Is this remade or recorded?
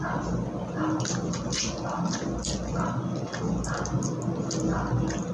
recorded